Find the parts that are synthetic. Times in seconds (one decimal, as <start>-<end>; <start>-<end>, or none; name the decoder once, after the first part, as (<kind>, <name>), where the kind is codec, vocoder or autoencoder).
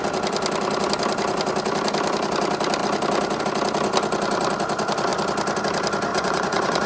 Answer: 6.1-6.9 (vocoder, Vocos)